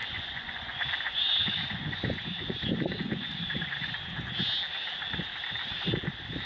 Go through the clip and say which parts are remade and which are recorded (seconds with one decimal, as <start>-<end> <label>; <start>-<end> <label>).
0.0-3.9 remade; 3.9-6.5 recorded